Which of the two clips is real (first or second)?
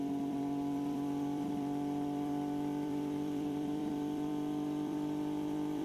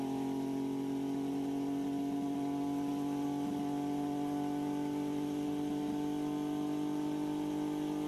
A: second